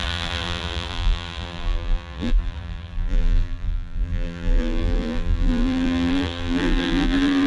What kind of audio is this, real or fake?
fake